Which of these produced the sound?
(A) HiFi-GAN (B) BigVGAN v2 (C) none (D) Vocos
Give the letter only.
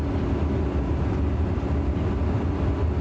C